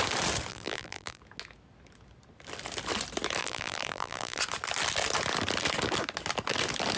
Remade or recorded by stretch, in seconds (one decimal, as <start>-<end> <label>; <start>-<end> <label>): 0.0-0.5 recorded; 0.5-1.2 remade; 1.2-3.4 recorded; 3.4-4.4 remade; 4.4-7.0 recorded